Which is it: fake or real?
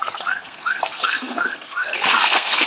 fake